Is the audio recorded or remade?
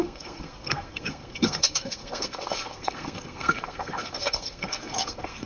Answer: remade